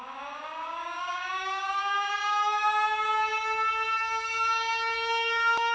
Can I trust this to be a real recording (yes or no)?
no